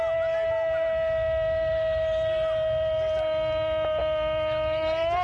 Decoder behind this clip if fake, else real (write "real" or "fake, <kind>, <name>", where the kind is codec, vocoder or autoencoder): real